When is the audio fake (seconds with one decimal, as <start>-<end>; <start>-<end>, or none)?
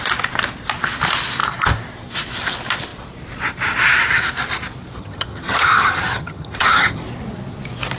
5.0-7.0